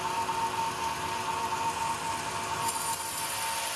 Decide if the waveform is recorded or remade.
recorded